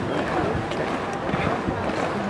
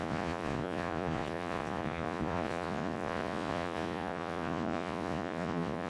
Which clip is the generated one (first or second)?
second